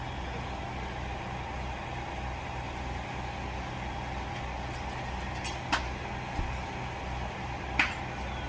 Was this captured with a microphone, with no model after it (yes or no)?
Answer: yes